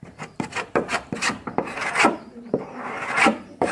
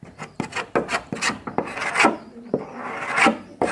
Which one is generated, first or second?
first